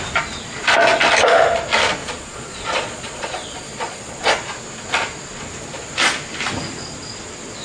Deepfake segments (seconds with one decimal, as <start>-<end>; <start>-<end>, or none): 2.0-4.2